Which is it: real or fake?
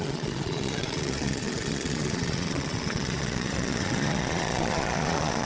fake